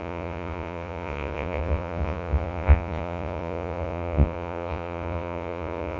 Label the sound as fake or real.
fake